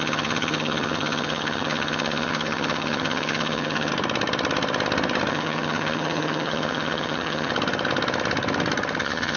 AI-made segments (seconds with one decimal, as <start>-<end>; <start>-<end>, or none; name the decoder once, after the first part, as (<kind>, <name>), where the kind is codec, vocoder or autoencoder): 0.0-3.9 (vocoder, HiFi-GAN); 5.3-7.5; 9.0-9.4